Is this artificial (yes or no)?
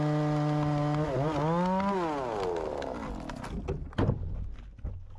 no